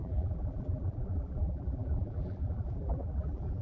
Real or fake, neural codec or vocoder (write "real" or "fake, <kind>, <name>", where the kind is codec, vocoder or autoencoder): fake, vocoder, BigVGAN v2